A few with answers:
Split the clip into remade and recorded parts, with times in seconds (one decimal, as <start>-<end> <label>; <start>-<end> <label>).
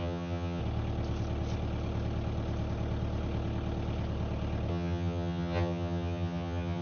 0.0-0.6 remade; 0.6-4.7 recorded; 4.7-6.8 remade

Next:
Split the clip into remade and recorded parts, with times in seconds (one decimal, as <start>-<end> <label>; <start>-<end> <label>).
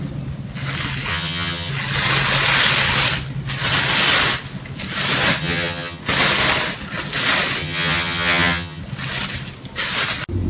0.0-1.1 recorded; 1.1-1.7 remade; 1.7-5.4 recorded; 5.4-6.0 remade; 6.0-7.6 recorded; 7.6-8.8 remade; 8.8-10.5 recorded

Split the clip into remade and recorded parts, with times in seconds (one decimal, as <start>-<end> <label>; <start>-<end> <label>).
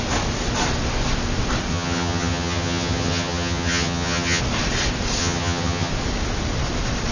0.0-1.7 recorded; 1.7-4.4 remade; 4.4-5.2 recorded; 5.2-5.9 remade; 5.9-7.1 recorded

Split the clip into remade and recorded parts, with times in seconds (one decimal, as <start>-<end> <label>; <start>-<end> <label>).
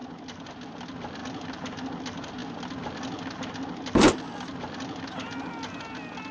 0.0-6.3 recorded